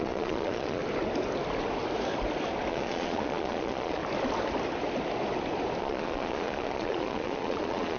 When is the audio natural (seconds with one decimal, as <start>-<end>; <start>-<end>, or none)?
0.8-2.7; 4.0-5.8